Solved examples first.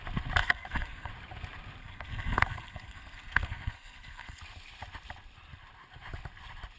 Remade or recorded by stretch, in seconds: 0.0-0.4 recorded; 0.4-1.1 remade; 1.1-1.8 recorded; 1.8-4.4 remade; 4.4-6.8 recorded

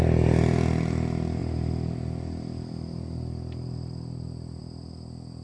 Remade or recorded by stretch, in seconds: 0.0-5.4 recorded

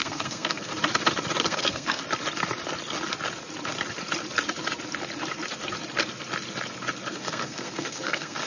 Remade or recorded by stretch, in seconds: 0.0-0.7 remade; 0.7-1.4 recorded; 1.4-2.0 remade; 2.0-7.1 recorded; 7.1-8.5 remade